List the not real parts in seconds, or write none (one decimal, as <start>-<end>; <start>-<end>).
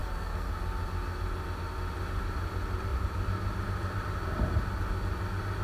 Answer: 0.0-0.5